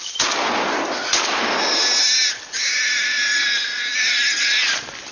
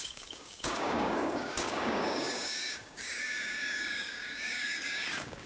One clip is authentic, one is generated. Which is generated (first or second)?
second